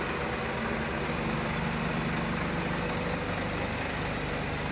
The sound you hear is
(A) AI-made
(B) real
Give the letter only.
B